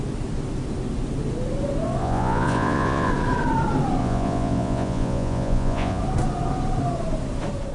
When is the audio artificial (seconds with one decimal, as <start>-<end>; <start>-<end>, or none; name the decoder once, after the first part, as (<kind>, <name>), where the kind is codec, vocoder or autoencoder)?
2.0-3.1 (vocoder, Vocos); 4.0-6.0

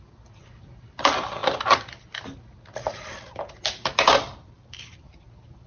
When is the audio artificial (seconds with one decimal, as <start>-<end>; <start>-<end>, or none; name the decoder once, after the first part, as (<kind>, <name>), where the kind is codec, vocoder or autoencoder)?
none

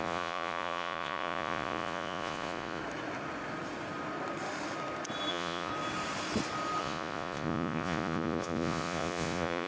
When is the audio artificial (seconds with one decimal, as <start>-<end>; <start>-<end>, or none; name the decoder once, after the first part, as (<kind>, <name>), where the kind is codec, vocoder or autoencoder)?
0.0-2.8 (vocoder, Vocos); 5.3-5.7; 6.8-9.7

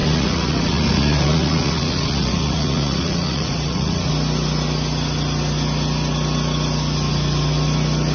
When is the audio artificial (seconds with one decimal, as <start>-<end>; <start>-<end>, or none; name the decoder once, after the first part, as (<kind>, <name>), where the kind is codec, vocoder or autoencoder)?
0.0-4.1 (vocoder, Vocos)

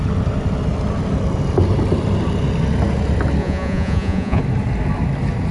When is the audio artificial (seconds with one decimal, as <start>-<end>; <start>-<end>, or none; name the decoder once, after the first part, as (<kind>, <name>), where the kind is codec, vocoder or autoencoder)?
3.4-4.4 (vocoder, Vocos)